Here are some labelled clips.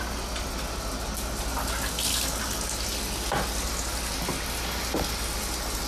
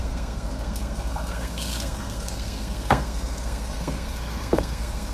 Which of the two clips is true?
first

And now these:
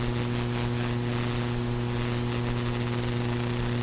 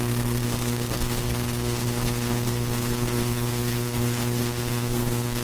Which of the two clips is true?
first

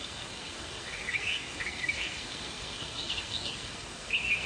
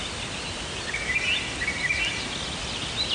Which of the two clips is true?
second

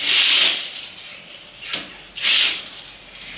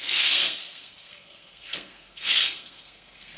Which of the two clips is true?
first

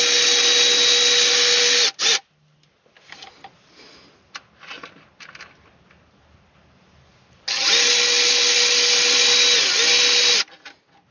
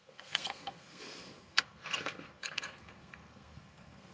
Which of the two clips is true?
first